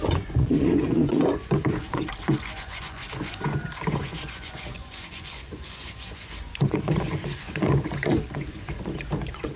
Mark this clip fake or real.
fake